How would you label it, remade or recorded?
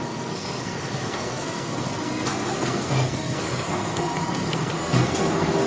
remade